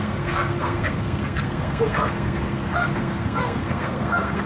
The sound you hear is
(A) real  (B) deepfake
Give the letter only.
B